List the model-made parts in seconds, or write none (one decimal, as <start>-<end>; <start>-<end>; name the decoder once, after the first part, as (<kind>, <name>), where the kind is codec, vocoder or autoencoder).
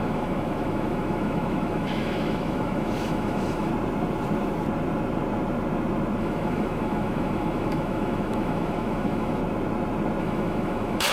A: 0.0-3.7 (autoencoder, DAC-VAE); 6.2-9.4; 10.2-11.1